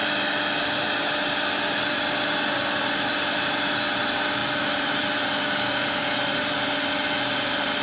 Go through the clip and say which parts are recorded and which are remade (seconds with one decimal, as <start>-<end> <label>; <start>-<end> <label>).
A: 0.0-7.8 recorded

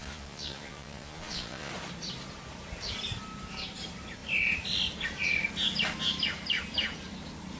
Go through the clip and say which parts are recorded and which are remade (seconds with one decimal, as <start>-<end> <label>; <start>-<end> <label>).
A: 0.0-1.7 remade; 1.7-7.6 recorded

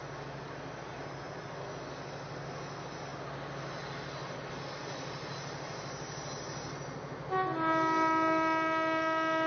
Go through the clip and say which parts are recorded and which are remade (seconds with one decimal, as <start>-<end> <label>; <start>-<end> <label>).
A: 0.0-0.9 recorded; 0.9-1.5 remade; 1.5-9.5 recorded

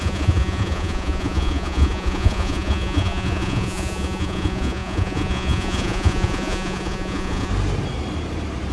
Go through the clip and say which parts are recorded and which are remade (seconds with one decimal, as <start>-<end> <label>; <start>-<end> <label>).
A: 0.0-7.5 remade; 7.5-8.7 recorded

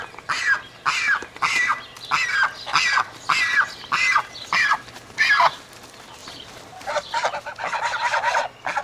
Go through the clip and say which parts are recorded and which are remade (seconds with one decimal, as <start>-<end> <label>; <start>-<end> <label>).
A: 0.0-6.2 recorded; 6.2-6.9 remade; 6.9-8.8 recorded

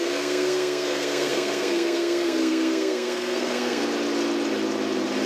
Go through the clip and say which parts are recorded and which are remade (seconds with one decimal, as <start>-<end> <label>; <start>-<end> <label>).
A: 0.0-3.8 remade; 3.8-5.3 recorded

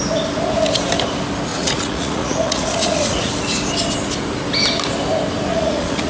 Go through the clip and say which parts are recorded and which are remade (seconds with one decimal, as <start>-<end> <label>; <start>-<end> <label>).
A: 0.0-1.5 recorded; 1.5-3.3 remade; 3.3-5.5 recorded; 5.5-6.1 remade